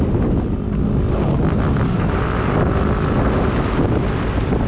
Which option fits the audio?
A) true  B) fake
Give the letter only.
A